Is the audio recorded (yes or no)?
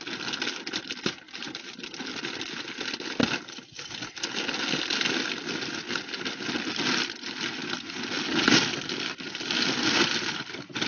yes